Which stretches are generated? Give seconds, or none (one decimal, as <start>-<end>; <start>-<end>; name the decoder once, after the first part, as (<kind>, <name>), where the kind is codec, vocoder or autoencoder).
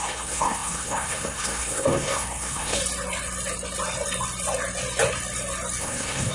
0.0-2.8 (codec, SNAC); 5.8-6.3